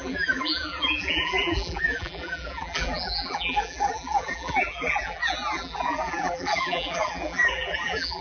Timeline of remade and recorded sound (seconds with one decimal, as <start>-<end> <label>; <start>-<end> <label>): 0.0-8.2 remade